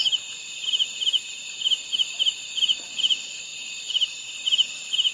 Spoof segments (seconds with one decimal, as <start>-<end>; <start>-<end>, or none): 3.5-5.1